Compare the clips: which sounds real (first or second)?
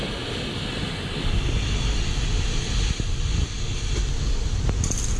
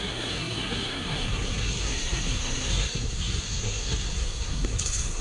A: first